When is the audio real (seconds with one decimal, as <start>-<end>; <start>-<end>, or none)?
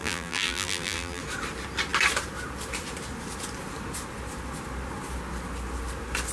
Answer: 1.2-6.3